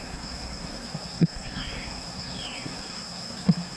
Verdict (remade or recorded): remade